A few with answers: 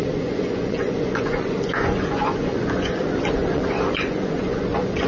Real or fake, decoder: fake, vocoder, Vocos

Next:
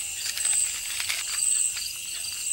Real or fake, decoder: real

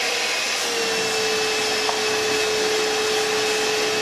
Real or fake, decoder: real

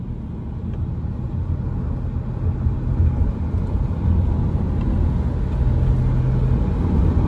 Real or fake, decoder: real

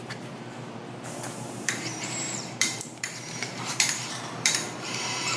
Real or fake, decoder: fake, vocoder, BigVGAN v2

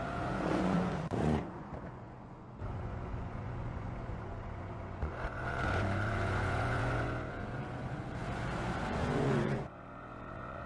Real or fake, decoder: fake, vocoder, Vocos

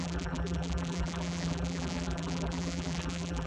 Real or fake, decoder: fake, vocoder, BigVGAN v2